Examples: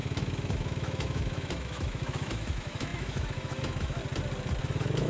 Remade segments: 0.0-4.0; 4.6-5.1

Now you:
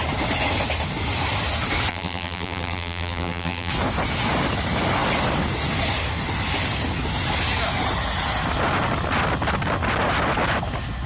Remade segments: 1.9-3.7

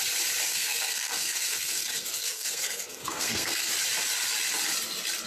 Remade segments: 0.5-3.7

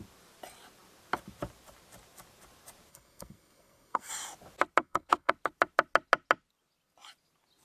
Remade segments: 2.9-4.1; 4.8-5.3